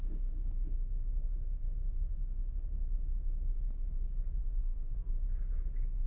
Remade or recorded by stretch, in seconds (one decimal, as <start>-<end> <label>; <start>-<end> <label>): 0.0-4.4 recorded; 4.4-5.1 remade; 5.1-6.1 recorded